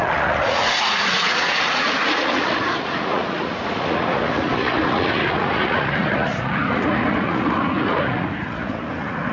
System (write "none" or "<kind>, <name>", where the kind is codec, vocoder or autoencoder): vocoder, Vocos